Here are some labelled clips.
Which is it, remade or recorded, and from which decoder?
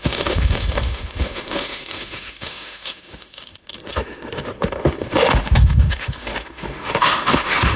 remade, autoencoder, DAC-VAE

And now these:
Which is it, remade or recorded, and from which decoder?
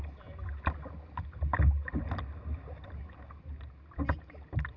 recorded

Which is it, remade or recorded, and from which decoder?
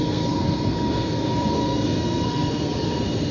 remade, codec, SNAC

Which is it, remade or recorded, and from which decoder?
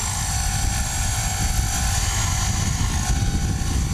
recorded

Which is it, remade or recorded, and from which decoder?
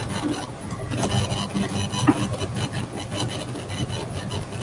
recorded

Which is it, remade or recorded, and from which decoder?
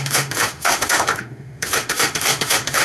remade, autoencoder, DAC-VAE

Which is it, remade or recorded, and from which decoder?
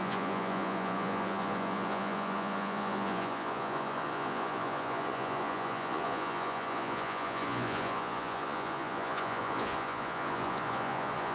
remade, vocoder, Vocos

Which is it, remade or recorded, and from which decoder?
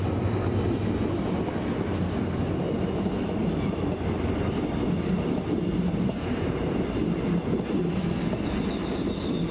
recorded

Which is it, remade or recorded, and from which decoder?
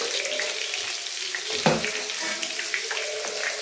recorded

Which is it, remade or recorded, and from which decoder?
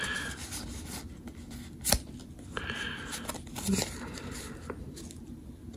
recorded